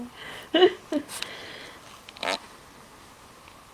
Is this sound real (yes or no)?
yes